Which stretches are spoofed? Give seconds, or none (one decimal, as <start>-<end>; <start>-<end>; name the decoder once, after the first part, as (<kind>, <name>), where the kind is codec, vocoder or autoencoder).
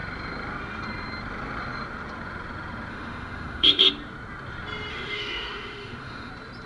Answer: 2.9-3.9 (autoencoder, DAC-VAE); 4.9-6.3